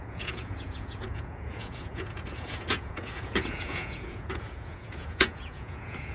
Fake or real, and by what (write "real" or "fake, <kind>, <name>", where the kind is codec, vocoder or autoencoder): fake, vocoder, Vocos